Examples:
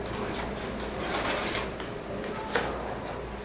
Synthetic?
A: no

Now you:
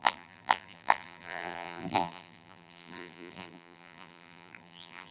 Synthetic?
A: yes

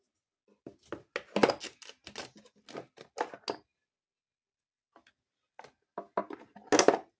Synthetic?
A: no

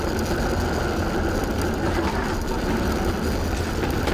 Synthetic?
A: no